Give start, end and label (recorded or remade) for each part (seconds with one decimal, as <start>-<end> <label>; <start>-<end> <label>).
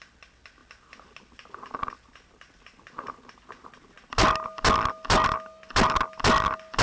0.0-6.8 recorded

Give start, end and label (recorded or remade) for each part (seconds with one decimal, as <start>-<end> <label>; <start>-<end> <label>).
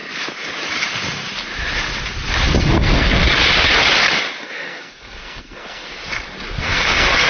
0.0-2.6 recorded; 2.6-3.2 remade; 3.2-4.4 recorded; 4.4-6.0 remade; 6.0-6.6 recorded; 6.6-7.3 remade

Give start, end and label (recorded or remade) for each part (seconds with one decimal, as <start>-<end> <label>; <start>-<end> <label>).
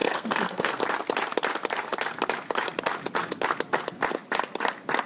0.0-0.8 remade; 0.8-5.1 recorded